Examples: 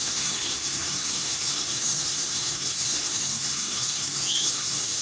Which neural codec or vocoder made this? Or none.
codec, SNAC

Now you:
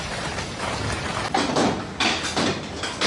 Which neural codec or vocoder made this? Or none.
none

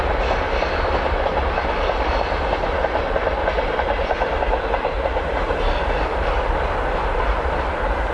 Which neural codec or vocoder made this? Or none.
none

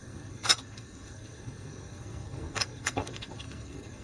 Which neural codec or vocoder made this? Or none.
codec, SNAC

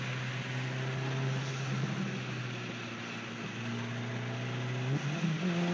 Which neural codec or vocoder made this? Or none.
none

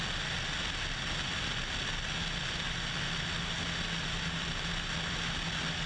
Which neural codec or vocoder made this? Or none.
none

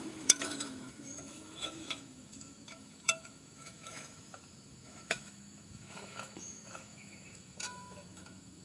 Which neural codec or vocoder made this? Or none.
autoencoder, DAC-VAE